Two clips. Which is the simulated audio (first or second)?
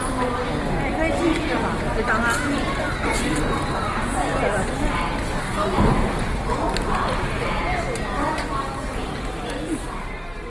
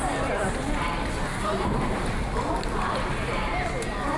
second